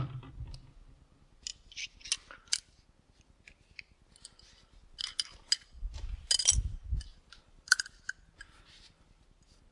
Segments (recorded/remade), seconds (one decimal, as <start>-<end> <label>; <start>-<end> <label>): 0.0-7.1 recorded; 7.1-8.0 remade; 8.0-9.7 recorded